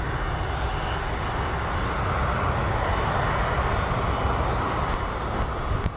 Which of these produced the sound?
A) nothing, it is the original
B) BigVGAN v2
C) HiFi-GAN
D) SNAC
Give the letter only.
A